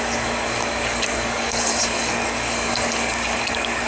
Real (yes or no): no